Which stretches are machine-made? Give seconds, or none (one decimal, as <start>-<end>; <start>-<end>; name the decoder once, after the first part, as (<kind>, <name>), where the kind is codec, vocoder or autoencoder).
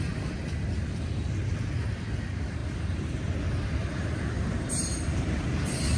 2.6-3.3 (vocoder, BigVGAN v2); 3.8-6.0